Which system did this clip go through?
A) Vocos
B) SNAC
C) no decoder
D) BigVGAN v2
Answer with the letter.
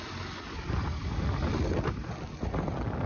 C